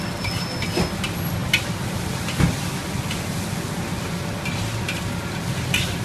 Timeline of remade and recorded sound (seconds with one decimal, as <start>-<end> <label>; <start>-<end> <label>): 0.0-6.0 recorded